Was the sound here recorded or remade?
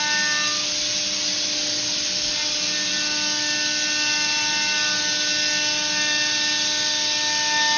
recorded